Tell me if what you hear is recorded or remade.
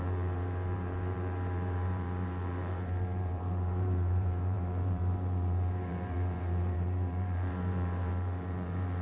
remade